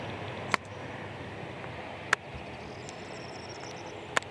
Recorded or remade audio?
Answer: recorded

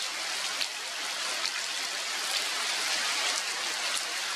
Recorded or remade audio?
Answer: recorded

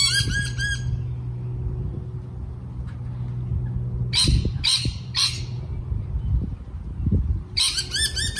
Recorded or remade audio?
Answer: recorded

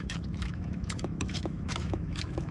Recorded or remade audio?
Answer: remade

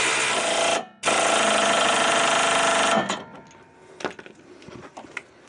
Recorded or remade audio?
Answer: recorded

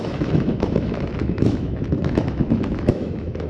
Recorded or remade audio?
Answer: remade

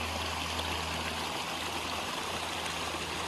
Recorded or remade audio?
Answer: recorded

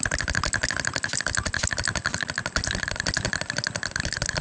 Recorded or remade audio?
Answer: recorded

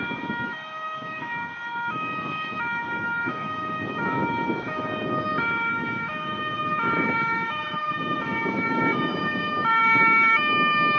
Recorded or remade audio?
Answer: remade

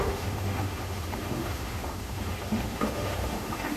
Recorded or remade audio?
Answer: remade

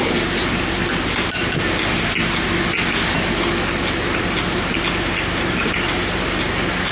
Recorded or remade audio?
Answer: recorded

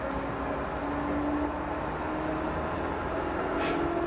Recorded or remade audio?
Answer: recorded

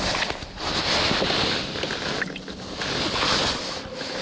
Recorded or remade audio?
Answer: recorded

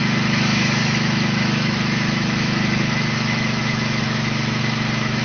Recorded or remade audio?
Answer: remade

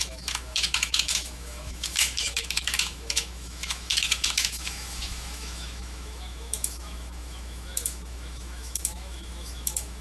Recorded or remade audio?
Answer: remade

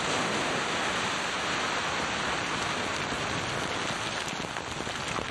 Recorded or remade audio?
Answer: recorded